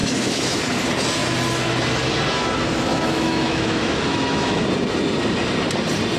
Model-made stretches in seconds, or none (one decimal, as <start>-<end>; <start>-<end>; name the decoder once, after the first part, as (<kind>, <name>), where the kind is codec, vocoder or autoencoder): 0.0-0.6 (autoencoder, DAC-VAE); 2.9-4.6